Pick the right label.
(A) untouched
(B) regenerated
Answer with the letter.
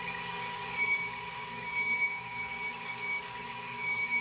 B